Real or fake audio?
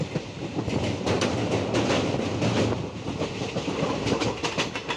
real